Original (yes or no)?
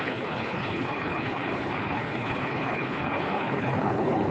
no